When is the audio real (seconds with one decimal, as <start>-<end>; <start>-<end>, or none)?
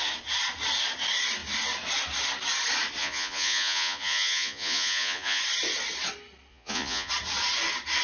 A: 0.0-3.0; 5.4-6.5; 7.1-8.0